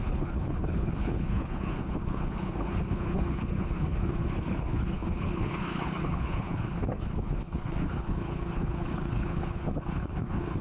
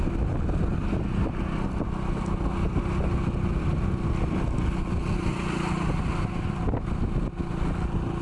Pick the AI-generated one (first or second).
first